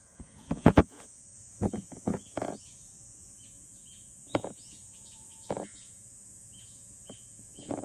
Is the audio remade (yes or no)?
yes